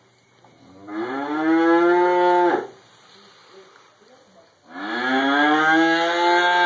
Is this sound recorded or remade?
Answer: recorded